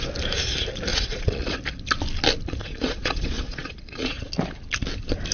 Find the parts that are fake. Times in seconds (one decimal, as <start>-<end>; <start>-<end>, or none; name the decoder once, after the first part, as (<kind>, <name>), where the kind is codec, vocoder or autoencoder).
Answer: 0.9-1.6 (vocoder, Vocos); 2.6-4.3